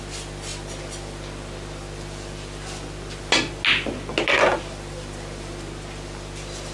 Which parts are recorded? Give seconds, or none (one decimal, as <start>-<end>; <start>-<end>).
0.0-6.7